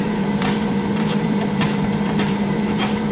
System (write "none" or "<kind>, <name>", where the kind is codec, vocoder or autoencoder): vocoder, BigVGAN v2